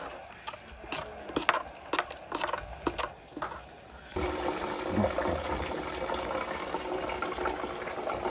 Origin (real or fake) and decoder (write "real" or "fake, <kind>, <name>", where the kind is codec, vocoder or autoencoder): real